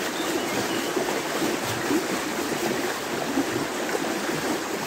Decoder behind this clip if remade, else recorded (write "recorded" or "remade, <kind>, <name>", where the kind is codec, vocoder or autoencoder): recorded